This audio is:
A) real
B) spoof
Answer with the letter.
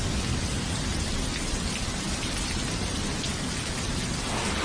A